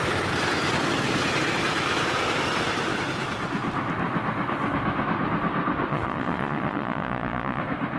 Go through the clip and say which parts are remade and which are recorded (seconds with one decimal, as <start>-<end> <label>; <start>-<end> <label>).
0.0-5.9 recorded; 5.9-7.6 remade; 7.6-8.0 recorded